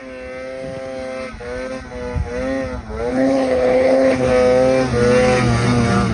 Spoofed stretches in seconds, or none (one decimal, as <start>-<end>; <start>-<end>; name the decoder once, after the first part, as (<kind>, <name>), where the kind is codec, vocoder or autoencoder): 3.1-4.3 (codec, HILCodec)